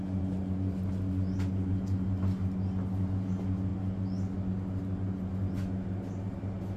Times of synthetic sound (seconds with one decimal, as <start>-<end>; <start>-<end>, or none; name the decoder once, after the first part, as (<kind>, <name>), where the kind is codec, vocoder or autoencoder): none